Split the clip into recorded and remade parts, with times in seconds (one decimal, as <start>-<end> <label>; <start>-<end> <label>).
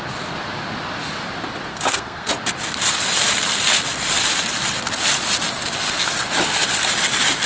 0.0-1.7 recorded; 1.7-2.3 remade; 2.3-7.5 recorded